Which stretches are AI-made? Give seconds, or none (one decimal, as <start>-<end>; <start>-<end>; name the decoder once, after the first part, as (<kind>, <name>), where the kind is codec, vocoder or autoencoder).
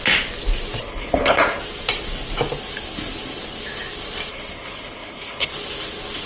0.8-1.6 (codec, HILCodec); 4.3-5.5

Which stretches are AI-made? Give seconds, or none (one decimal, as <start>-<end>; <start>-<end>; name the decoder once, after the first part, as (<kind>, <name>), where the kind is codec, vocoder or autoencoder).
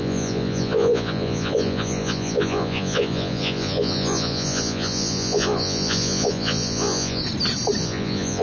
0.0-7.2 (vocoder, Vocos); 7.8-8.4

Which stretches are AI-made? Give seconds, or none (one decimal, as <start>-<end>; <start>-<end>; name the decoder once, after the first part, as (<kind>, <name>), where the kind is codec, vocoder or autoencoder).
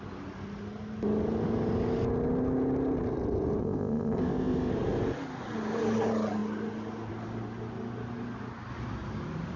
3.6-4.7 (codec, ZipCodec)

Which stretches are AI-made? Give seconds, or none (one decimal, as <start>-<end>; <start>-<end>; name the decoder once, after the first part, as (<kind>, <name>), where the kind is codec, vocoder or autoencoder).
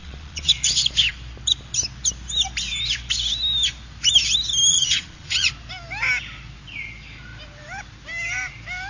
0.0-0.5 (vocoder, Vocos); 4.7-5.5